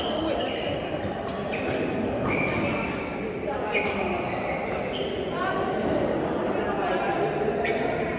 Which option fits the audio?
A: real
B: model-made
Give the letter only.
A